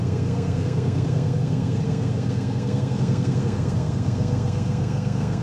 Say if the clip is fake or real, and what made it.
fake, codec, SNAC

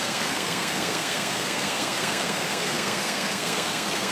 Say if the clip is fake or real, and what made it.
fake, codec, SNAC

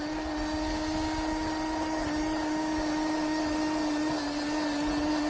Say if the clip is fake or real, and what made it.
real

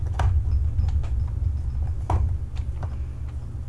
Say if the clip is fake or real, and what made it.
real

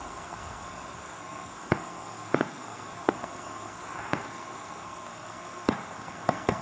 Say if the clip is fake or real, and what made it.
fake, codec, SNAC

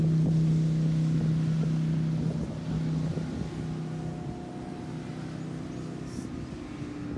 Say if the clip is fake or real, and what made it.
real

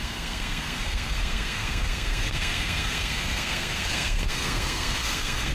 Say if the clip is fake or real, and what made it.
fake, codec, SNAC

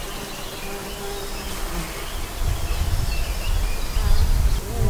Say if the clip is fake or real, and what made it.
real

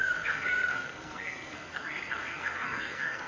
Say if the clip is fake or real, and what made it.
fake, codec, SNAC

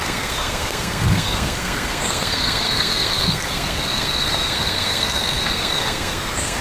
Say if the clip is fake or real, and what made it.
fake, codec, SNAC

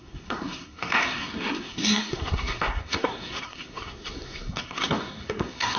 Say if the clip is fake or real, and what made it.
fake, codec, SNAC